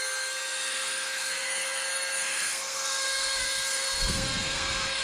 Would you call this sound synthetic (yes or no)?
yes